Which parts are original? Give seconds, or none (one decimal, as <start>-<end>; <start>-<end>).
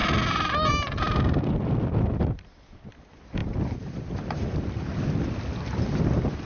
0.0-1.0